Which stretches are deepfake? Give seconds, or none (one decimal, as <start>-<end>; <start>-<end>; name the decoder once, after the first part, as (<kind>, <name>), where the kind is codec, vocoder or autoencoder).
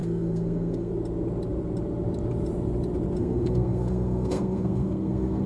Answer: 0.0-0.9 (codec, SNAC); 3.2-5.5